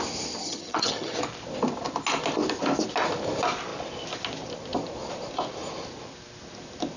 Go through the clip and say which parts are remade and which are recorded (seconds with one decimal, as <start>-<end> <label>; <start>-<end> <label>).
0.0-0.4 recorded; 0.4-1.2 remade; 1.2-7.0 recorded